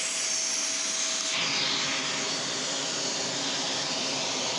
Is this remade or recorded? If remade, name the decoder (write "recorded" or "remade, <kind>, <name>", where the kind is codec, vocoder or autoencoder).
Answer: recorded